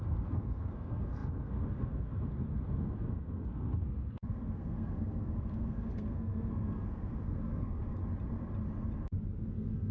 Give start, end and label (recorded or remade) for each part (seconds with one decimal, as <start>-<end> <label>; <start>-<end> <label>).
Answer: 0.0-8.0 remade; 8.0-9.4 recorded; 9.4-9.9 remade